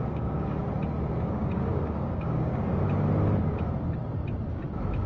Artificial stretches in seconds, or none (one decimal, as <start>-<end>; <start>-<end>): 0.0-0.6; 1.2-2.8